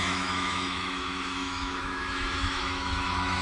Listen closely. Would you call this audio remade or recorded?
remade